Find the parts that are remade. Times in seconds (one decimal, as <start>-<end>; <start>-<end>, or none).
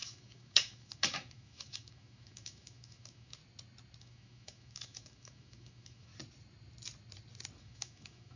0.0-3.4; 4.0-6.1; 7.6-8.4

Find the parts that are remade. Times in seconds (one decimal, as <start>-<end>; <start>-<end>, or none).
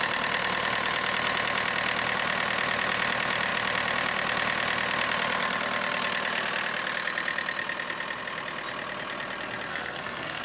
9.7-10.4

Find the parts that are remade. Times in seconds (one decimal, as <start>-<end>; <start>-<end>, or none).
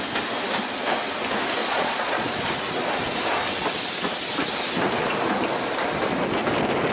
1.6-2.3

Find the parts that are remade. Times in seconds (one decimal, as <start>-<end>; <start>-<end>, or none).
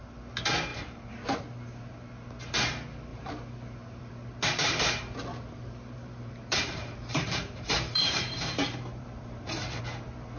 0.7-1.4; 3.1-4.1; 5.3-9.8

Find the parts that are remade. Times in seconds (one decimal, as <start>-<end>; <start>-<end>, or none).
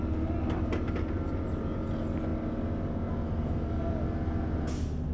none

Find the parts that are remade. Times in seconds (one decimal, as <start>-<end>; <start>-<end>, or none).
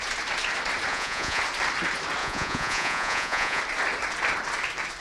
0.9-1.4; 2.2-3.6